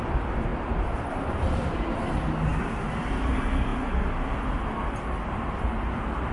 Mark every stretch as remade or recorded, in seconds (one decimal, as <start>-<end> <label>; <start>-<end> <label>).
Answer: 0.0-6.3 recorded